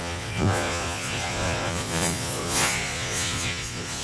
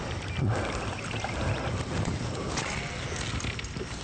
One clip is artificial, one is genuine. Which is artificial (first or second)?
first